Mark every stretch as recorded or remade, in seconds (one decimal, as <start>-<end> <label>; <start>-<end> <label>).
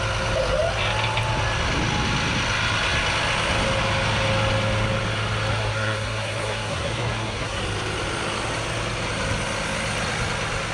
0.0-5.5 recorded; 5.5-7.6 remade; 7.6-10.7 recorded